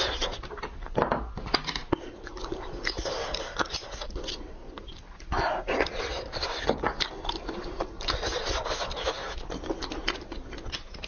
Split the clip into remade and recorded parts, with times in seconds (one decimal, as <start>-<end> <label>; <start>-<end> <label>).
0.0-11.1 recorded